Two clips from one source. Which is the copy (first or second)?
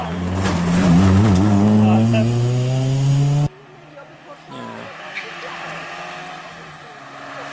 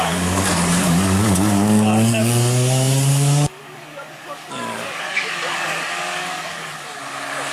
second